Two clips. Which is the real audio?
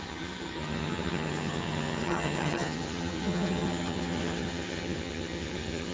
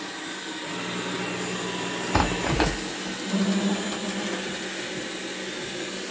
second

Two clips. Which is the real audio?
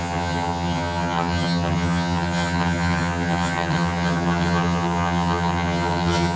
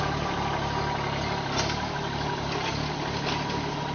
second